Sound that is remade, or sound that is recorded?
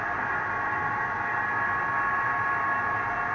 recorded